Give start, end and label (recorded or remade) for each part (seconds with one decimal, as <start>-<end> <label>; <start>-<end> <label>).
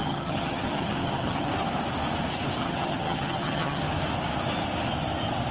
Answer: 0.0-1.5 remade; 1.5-2.6 recorded; 2.6-3.8 remade; 3.8-5.5 recorded